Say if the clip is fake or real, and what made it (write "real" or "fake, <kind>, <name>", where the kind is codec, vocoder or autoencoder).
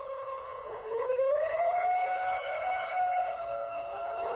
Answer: fake, codec, HILCodec